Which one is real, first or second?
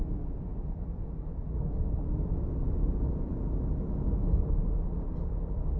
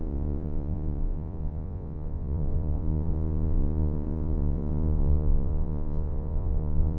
first